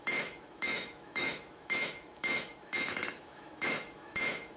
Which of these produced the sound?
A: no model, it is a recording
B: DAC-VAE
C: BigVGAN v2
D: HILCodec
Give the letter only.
B